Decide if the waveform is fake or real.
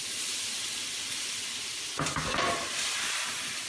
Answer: real